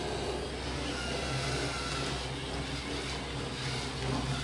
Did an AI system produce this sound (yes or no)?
no